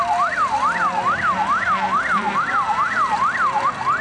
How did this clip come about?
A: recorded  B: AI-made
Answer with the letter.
B